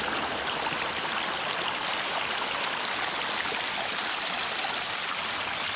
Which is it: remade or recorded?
recorded